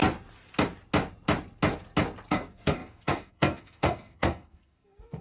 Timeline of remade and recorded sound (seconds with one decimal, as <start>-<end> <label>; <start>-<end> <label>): 0.0-2.3 recorded; 2.3-5.2 remade